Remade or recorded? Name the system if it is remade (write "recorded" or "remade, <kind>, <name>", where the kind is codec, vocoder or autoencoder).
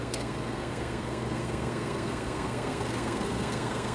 remade, codec, SNAC